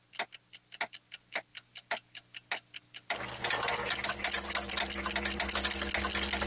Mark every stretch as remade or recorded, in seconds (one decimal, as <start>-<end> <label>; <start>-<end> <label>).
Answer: 0.0-6.5 recorded